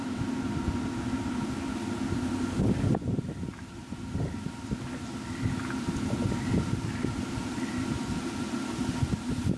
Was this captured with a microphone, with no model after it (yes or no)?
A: yes